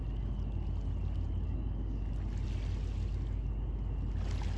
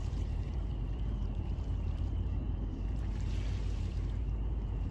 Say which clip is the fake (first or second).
second